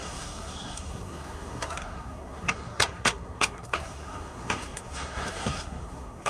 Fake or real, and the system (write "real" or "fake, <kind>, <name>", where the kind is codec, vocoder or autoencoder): fake, codec, SNAC